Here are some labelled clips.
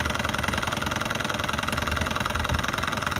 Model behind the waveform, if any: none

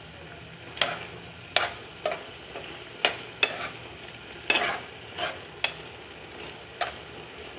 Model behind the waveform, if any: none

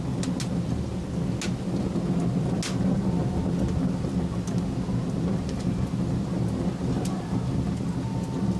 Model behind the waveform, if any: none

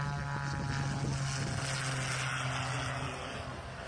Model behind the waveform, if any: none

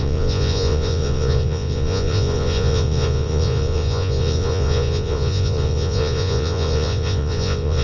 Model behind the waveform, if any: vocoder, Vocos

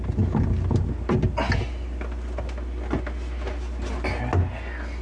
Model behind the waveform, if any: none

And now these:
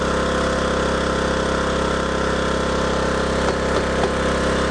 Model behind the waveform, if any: none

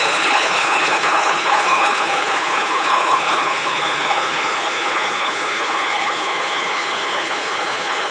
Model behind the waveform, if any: codec, HILCodec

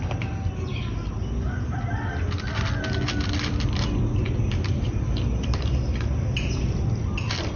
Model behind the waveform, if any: none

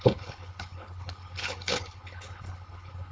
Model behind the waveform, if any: codec, HILCodec